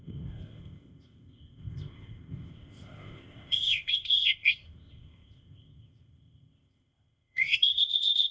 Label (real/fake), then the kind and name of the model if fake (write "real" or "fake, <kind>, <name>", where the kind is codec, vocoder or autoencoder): fake, codec, ZipCodec